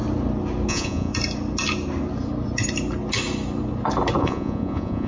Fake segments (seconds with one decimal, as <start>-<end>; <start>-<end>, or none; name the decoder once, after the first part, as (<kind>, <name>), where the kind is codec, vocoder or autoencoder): 0.7-1.1 (vocoder, Vocos); 4.2-5.1